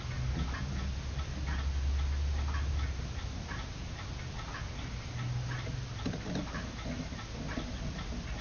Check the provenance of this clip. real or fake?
real